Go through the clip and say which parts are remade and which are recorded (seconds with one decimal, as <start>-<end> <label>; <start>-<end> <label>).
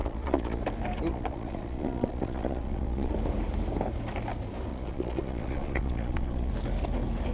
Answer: 0.0-0.6 remade; 0.6-1.1 recorded; 1.1-3.1 remade; 3.1-4.7 recorded; 4.7-6.5 remade; 6.5-7.3 recorded